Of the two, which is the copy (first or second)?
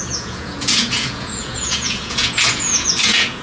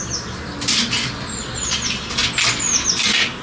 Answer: first